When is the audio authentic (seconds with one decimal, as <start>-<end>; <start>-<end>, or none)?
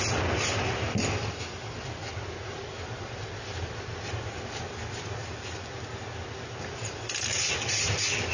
0.0-8.3